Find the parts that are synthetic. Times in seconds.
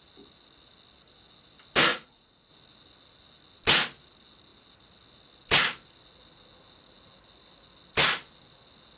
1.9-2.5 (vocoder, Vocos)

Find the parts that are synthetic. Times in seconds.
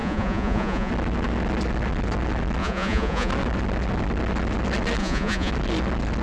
0.0-0.9 (vocoder, Vocos); 2.6-3.3; 5.0-5.5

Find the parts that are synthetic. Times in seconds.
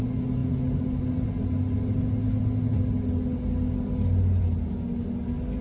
none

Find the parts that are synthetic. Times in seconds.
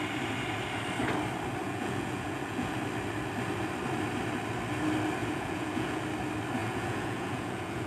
1.6-2.7 (vocoder, Vocos); 5.2-6.0; 6.6-7.9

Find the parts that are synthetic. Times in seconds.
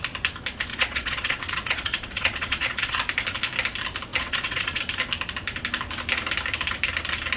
0.7-3.0 (vocoder, Vocos); 4.1-4.8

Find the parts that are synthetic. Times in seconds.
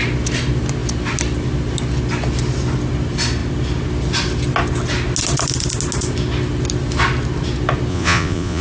7.9-8.6 (vocoder, Vocos)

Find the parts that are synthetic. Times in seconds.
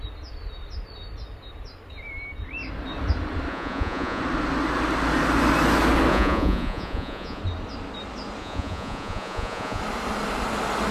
3.5-4.2 (vocoder, Vocos); 6.1-7.4; 8.4-9.8